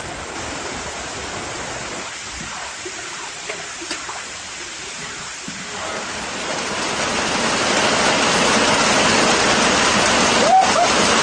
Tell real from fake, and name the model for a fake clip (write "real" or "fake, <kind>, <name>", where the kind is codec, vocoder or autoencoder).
real